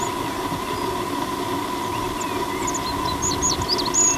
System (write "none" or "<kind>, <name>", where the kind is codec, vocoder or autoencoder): none